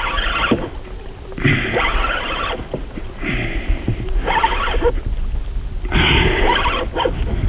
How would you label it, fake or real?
real